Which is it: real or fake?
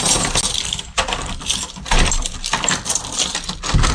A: real